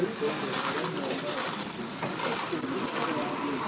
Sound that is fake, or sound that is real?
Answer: real